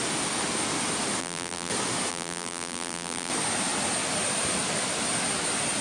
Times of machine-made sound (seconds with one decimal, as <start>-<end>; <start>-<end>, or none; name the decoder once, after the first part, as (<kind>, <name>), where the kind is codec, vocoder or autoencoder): 1.2-1.7 (vocoder, BigVGAN v2); 2.1-3.3